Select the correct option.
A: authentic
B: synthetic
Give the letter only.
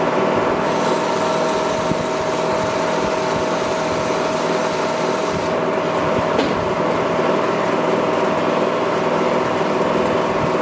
A